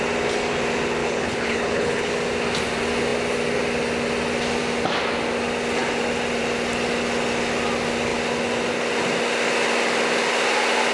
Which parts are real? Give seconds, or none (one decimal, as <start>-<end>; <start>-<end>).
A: 0.0-1.0; 2.1-10.9